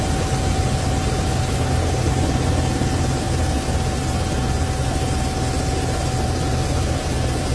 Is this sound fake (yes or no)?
no